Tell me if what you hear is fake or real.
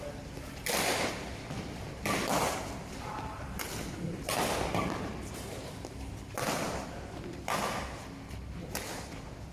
fake